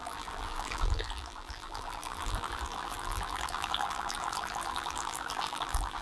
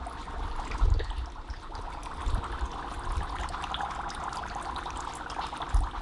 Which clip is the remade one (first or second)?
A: first